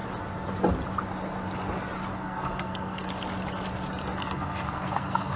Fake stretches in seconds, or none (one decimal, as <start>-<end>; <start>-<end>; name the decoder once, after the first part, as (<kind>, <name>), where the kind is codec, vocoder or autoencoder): 2.1-3.1 (codec, SNAC); 4.2-5.4